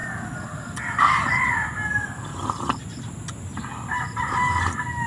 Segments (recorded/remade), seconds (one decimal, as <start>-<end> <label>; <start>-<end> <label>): 0.0-5.1 recorded